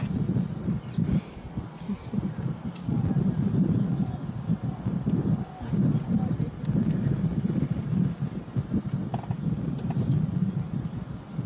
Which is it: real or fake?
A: real